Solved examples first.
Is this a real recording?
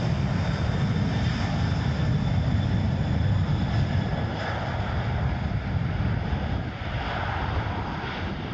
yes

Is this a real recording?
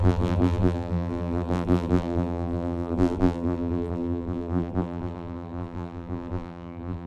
no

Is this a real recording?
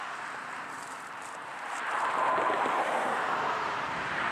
no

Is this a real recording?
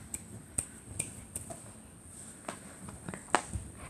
yes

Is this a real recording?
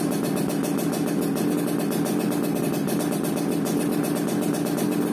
yes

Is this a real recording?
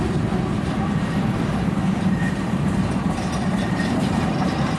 no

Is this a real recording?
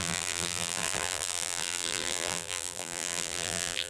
no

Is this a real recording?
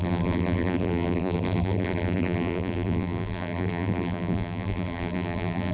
no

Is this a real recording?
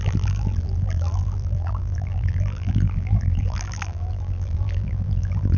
no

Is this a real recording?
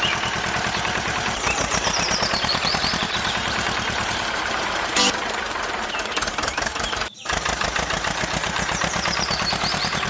no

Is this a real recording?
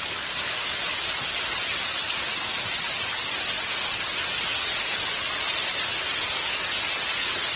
yes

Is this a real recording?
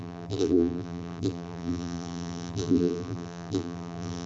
no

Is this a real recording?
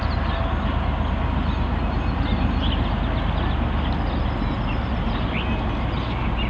yes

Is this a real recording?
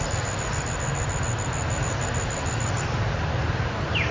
yes